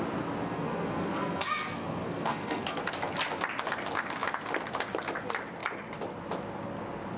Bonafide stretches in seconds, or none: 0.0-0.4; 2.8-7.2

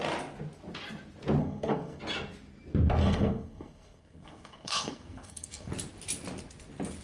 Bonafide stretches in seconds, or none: 0.0-1.4; 2.0-3.0; 5.7-7.0